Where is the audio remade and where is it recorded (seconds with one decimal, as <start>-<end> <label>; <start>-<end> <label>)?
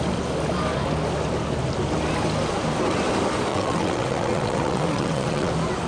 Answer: 0.0-3.5 recorded; 3.5-5.5 remade; 5.5-5.9 recorded